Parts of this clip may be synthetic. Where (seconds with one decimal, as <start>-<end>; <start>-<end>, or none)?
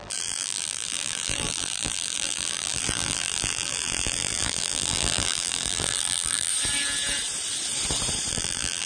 0.0-6.5; 8.3-8.9